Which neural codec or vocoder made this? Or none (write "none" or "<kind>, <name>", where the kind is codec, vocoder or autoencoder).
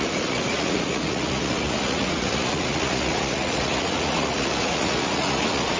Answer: vocoder, Vocos